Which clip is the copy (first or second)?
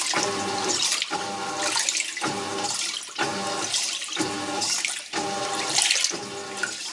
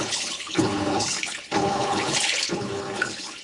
second